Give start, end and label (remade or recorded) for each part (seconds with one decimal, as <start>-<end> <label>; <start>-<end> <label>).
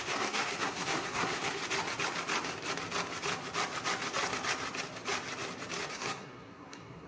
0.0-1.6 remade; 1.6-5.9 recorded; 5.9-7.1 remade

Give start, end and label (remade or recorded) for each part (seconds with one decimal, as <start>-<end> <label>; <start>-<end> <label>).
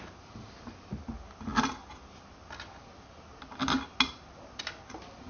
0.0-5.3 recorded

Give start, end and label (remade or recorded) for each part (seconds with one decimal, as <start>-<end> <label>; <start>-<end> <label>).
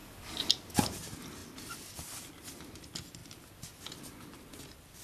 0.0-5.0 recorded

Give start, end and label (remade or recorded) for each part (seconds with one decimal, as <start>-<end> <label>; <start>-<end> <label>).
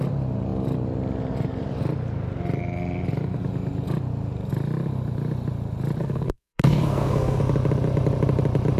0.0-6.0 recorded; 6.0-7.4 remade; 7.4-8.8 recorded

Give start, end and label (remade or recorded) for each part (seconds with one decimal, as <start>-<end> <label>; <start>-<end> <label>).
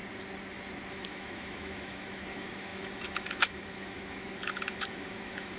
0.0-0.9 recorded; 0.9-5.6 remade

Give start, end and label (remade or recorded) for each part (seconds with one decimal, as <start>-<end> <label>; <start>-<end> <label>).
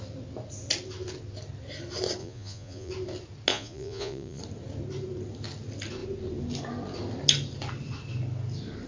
0.0-2.2 recorded; 2.2-2.9 remade; 2.9-3.5 recorded; 3.5-4.4 remade; 4.4-8.9 recorded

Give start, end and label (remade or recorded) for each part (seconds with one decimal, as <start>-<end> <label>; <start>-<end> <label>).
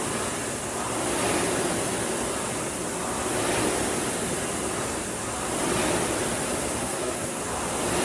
0.0-6.8 recorded; 6.8-7.4 remade; 7.4-8.0 recorded